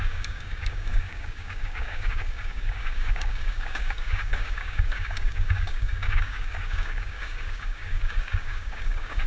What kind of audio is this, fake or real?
fake